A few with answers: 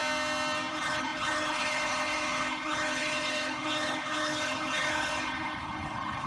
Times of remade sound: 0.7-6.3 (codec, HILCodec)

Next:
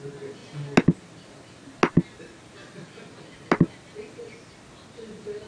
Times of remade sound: none

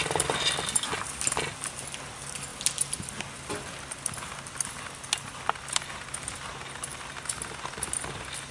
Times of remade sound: none

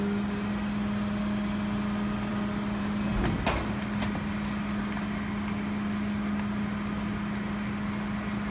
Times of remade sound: none

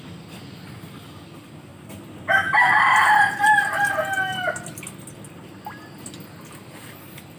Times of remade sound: none

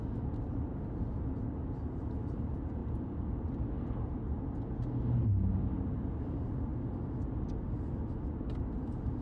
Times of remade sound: none

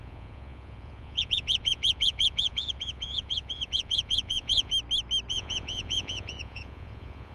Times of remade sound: 0.0-4.7 (vocoder, Vocos); 5.3-7.3

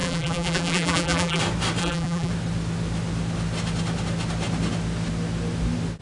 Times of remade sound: 0.0-1.4 (vocoder, BigVGAN v2); 1.8-2.3